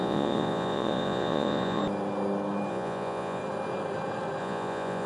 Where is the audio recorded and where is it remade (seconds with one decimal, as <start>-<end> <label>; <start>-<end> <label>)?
0.0-1.8 remade; 1.8-2.7 recorded; 2.7-3.4 remade; 3.4-4.4 recorded; 4.4-5.1 remade